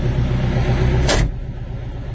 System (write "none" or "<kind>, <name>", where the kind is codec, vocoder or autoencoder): none